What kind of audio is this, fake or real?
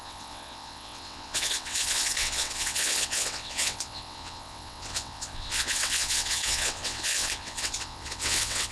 fake